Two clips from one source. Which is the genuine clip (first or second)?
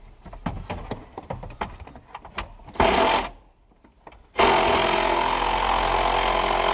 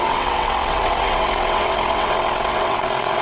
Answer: first